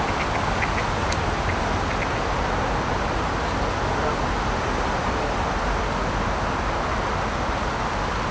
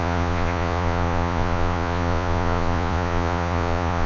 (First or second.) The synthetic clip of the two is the second